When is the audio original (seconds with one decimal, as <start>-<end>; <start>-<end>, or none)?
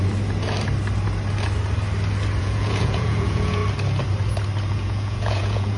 0.0-2.4; 3.6-4.7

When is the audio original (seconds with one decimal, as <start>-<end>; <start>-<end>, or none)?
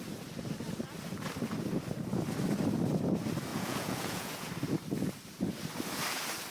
0.0-3.5; 4.5-6.5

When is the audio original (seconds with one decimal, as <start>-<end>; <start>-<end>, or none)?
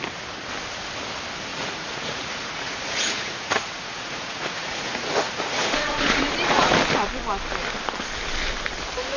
0.0-1.5; 6.7-9.2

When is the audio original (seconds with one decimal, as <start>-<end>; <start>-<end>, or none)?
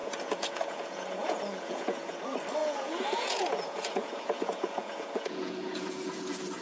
2.2-2.6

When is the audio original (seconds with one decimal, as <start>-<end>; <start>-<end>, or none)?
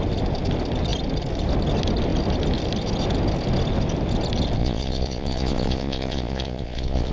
0.0-4.6